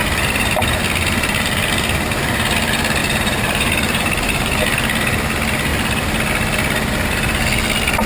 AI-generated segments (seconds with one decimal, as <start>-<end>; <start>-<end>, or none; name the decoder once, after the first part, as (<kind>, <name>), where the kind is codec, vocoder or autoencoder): 0.0-1.7 (vocoder, BigVGAN v2); 3.0-4.6